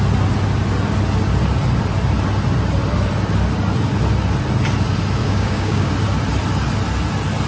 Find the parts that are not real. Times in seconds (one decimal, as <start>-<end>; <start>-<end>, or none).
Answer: 5.2-5.9